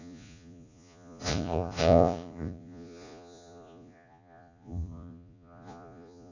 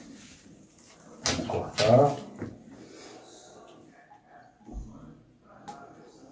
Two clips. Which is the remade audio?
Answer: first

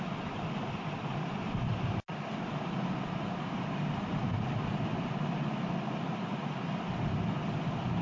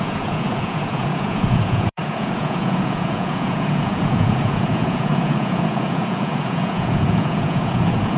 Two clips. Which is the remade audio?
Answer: second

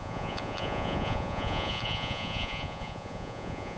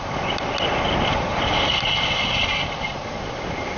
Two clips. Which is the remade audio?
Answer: first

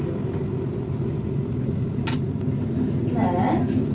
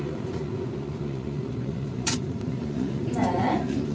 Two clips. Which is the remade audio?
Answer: second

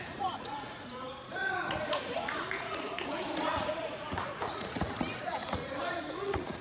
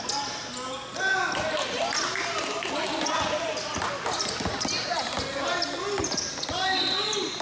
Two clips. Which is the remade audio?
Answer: first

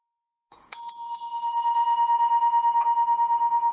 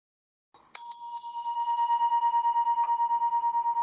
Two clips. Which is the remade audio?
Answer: first